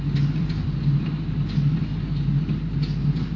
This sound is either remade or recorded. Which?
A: recorded